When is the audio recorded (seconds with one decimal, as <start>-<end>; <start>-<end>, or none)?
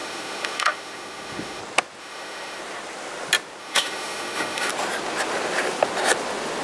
1.6-2.0; 2.6-3.6; 4.7-6.6